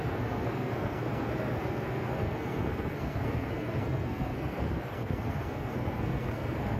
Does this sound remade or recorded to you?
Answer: remade